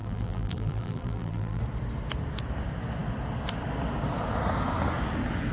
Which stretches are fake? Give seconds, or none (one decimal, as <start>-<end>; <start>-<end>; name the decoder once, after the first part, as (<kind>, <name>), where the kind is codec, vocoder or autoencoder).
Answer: 0.0-1.6 (vocoder, BigVGAN v2)

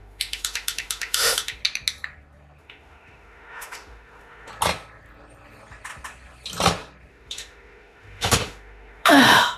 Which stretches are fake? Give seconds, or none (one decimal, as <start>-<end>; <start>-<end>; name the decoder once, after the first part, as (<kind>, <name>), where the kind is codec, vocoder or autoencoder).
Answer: 0.0-1.6 (autoencoder, DAC-VAE); 2.6-4.5; 7.1-9.6

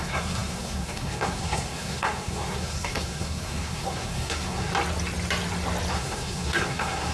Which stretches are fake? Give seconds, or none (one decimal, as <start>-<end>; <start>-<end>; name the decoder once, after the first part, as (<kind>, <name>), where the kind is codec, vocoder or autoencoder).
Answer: 0.0-4.7 (codec, SNAC); 5.9-7.1

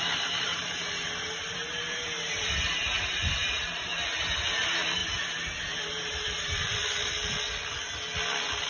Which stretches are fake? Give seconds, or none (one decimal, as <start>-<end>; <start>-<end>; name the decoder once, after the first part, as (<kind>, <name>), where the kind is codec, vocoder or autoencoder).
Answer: 0.0-3.9 (vocoder, BigVGAN v2); 4.5-6.8